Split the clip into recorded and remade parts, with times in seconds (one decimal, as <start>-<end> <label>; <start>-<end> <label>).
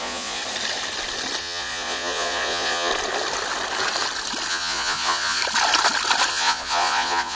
0.0-0.4 remade; 0.4-1.4 recorded; 1.4-2.9 remade; 2.9-4.5 recorded; 4.5-5.4 remade; 5.4-6.3 recorded; 6.3-7.3 remade